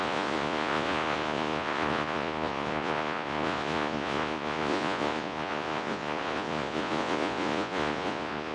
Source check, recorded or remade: remade